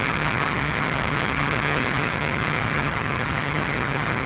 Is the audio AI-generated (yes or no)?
yes